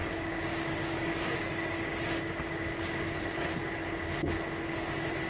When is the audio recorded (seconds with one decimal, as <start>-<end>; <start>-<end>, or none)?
3.2-5.3